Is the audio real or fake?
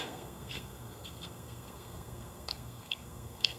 fake